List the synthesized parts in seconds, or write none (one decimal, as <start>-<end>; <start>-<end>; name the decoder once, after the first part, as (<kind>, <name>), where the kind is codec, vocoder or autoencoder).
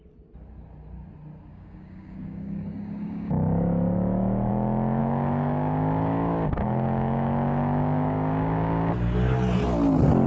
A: 1.5-4.5 (codec, DAC); 5.0-8.9